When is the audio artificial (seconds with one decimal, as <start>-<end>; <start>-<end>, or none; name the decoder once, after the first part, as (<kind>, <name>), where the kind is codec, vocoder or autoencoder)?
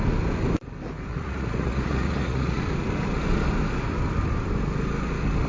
1.1-2.6 (vocoder, Vocos)